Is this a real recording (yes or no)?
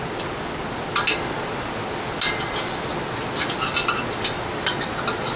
yes